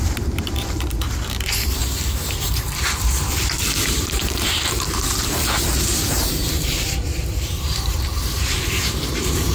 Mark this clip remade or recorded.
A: remade